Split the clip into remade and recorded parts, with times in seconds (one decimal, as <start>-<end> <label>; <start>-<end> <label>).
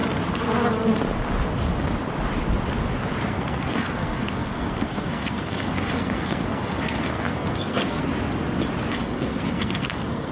0.0-3.2 recorded; 3.2-8.1 remade; 8.1-8.9 recorded; 8.9-10.3 remade